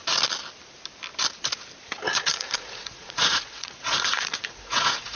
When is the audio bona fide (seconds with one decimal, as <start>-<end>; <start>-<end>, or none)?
0.0-1.8